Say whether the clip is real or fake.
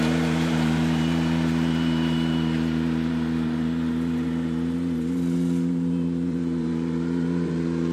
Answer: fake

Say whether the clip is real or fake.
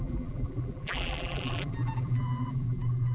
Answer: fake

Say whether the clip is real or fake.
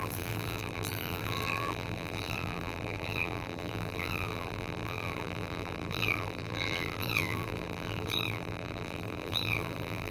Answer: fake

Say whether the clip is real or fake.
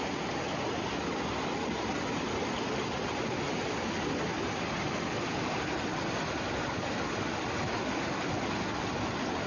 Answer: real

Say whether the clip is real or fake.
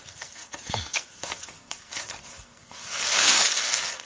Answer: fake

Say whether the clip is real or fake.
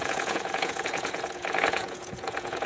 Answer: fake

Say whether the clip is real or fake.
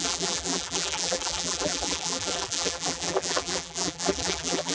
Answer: fake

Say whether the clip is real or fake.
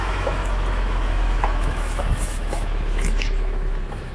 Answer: fake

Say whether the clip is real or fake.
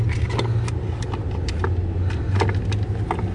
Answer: real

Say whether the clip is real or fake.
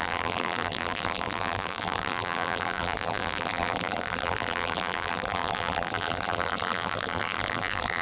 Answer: fake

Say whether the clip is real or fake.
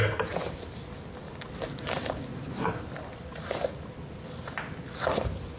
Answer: fake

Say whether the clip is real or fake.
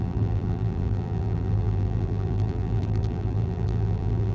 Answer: fake